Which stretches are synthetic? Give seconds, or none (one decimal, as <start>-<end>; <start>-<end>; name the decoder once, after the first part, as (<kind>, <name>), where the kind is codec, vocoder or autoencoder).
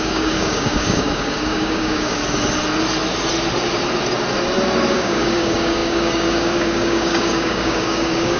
0.0-2.2 (codec, DAC); 4.9-8.4